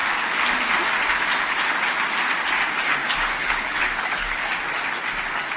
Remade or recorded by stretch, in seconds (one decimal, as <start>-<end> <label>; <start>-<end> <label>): 0.0-3.4 recorded; 3.4-4.5 remade; 4.5-5.6 recorded